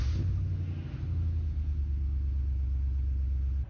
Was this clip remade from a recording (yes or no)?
no